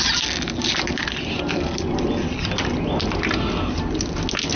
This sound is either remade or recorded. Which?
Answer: recorded